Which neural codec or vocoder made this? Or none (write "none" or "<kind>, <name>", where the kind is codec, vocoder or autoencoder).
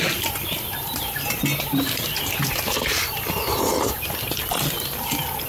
none